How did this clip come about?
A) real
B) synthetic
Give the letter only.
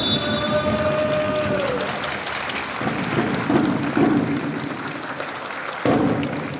A